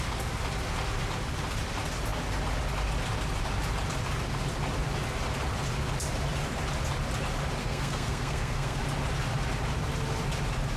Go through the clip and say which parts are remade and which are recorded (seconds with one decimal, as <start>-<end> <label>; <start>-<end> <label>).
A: 0.0-7.6 recorded; 7.6-8.8 remade; 8.8-10.8 recorded